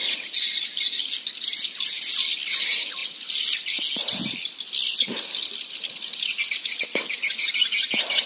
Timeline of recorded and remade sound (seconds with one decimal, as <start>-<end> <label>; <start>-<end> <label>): 0.0-8.3 recorded